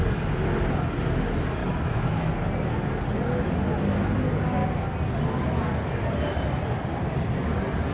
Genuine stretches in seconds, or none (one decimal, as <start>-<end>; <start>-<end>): 0.0-1.6; 2.3-7.9